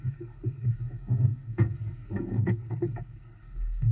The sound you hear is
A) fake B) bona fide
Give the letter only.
A